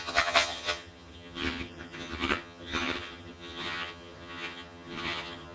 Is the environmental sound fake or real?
fake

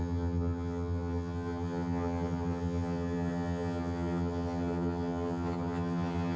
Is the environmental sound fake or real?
fake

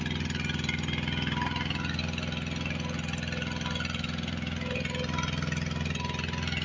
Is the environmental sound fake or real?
real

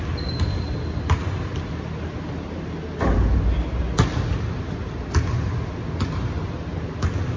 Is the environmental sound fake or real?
real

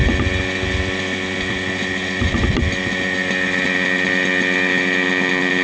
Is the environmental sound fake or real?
real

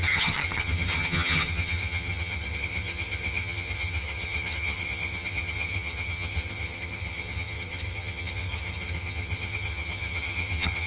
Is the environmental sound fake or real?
fake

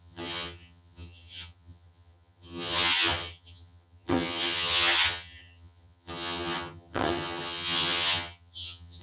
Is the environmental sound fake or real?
fake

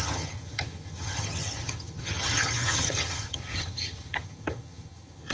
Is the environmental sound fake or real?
fake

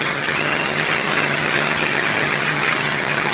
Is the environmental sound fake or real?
fake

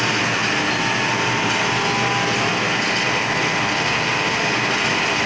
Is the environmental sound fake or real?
real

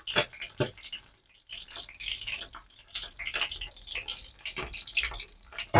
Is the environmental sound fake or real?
real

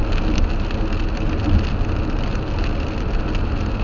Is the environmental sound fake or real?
real